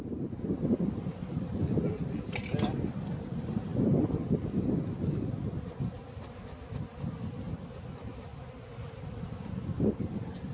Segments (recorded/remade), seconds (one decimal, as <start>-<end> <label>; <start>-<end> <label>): 0.0-10.5 recorded